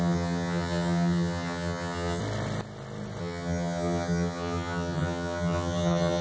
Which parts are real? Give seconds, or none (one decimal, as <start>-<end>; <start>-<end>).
2.2-3.2

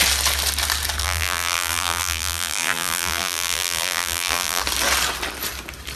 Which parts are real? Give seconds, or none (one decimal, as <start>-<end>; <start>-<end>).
0.0-1.0; 4.6-6.0

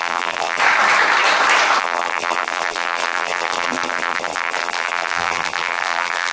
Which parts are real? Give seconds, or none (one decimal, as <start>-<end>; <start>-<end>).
0.6-1.8